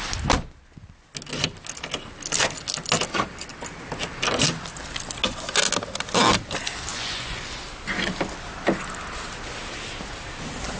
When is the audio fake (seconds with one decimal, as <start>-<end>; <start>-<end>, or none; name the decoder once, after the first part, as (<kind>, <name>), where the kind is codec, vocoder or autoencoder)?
6.9-7.4 (vocoder, Vocos)

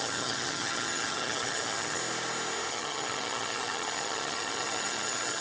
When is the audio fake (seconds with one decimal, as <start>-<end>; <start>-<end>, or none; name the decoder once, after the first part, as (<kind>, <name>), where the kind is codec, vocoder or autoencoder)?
0.0-2.0 (vocoder, HiFi-GAN); 2.7-5.4

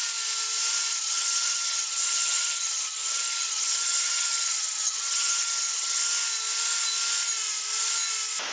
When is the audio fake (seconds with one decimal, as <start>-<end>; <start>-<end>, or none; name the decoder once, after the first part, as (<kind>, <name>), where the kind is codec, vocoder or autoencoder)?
0.9-6.0 (vocoder, HiFi-GAN)

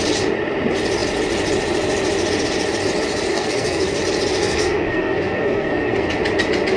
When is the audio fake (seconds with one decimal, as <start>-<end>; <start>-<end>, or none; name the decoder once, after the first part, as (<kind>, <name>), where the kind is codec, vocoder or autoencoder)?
3.3-4.0 (codec, SNAC); 4.4-6.1

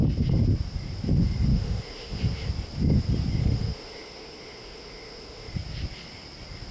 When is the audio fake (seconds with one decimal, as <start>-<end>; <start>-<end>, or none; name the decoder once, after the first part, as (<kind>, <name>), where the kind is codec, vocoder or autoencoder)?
1.5-2.5 (autoencoder, DAC-VAE); 3.4-5.5